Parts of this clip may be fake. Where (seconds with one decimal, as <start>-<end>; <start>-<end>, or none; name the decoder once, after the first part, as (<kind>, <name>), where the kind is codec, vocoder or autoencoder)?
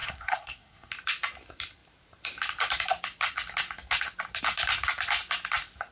0.0-0.9 (codec, SNAC)